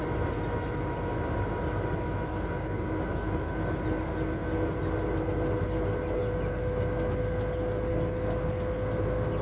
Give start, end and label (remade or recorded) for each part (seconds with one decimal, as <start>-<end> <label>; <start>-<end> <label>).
0.0-9.4 recorded